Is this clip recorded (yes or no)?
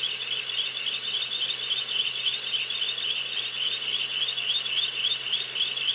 yes